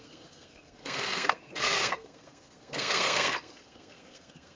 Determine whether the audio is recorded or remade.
remade